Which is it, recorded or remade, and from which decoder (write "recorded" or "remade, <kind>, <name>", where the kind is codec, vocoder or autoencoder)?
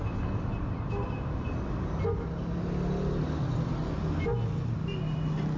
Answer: recorded